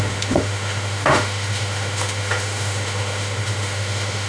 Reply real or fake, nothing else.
fake